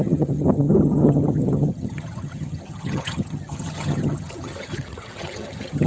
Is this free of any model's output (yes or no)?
no